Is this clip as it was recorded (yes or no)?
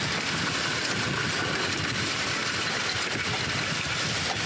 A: yes